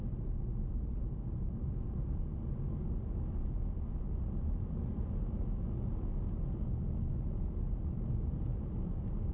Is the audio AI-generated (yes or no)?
no